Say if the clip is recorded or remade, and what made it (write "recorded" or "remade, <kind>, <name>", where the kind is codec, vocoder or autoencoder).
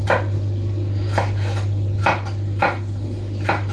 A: recorded